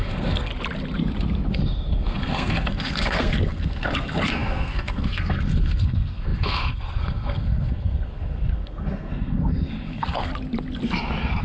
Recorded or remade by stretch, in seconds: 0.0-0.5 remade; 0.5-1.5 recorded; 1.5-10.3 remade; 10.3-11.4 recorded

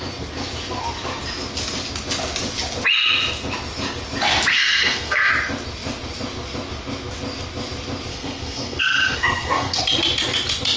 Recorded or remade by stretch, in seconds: 0.0-4.5 recorded; 4.5-5.3 remade; 5.3-8.1 recorded; 8.1-9.8 remade; 9.8-10.8 recorded

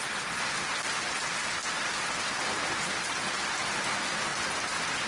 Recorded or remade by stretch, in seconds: 0.0-5.1 recorded

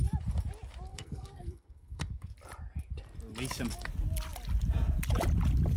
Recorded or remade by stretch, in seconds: 0.0-0.9 recorded; 0.9-2.3 remade; 2.3-5.8 recorded

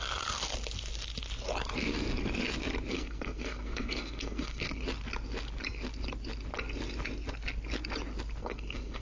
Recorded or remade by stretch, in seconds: 0.0-2.9 recorded; 2.9-4.8 remade; 4.8-8.4 recorded; 8.4-9.0 remade